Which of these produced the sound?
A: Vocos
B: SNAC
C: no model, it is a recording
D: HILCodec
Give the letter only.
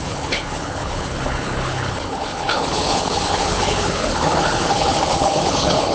D